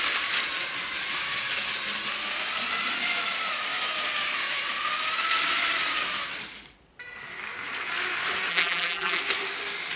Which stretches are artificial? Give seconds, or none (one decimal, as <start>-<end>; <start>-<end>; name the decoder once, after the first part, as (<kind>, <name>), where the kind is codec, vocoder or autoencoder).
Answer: 8.5-9.2 (vocoder, BigVGAN v2)

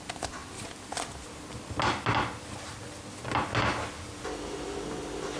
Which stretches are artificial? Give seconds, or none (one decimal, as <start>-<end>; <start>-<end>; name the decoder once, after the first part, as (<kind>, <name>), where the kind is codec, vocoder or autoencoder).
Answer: none

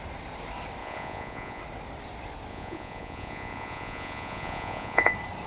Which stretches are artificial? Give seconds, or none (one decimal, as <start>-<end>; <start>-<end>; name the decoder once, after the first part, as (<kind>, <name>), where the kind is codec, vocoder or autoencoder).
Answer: 0.8-1.6 (vocoder, Vocos); 2.5-5.1

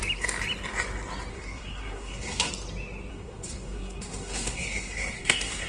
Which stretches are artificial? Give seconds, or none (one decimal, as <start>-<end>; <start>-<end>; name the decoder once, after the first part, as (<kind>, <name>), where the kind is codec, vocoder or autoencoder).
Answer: 1.3-2.5 (codec, SNAC); 3.1-5.7

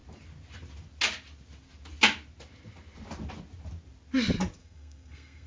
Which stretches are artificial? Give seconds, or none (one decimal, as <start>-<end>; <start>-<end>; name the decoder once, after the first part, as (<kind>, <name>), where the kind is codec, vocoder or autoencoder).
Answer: 4.6-5.5 (codec, SNAC)

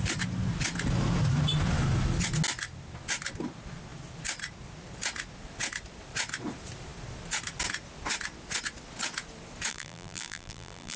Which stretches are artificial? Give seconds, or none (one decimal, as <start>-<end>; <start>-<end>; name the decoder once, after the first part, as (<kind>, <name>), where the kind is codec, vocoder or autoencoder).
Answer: 9.7-11.0 (vocoder, BigVGAN v2)

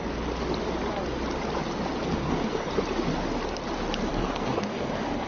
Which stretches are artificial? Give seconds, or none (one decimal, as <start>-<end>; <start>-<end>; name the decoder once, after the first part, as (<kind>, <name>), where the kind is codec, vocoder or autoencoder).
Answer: 2.0-2.7 (codec, SNAC); 4.1-5.3

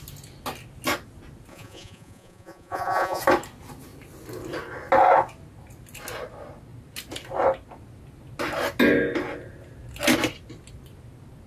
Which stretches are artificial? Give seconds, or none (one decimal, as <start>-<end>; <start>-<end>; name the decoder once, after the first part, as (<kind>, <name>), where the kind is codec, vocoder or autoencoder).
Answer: 1.5-3.2 (vocoder, Vocos)